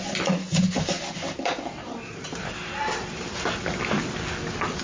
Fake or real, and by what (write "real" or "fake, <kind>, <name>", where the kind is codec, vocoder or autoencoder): real